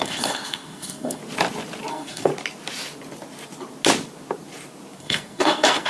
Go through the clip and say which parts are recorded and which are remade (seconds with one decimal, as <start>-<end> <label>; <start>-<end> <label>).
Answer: 0.0-1.2 remade; 1.2-1.9 recorded; 1.9-2.3 remade; 2.3-5.0 recorded; 5.0-5.9 remade